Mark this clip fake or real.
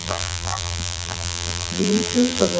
fake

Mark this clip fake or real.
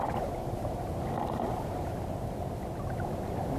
fake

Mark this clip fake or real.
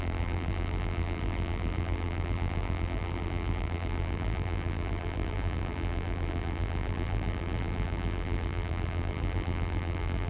fake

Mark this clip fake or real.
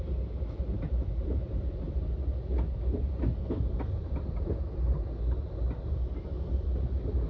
real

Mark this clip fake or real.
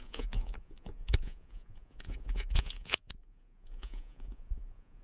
fake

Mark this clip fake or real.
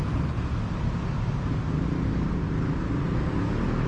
real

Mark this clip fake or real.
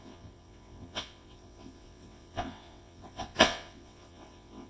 fake